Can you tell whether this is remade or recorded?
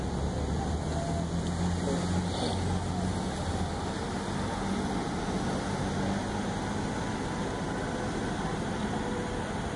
recorded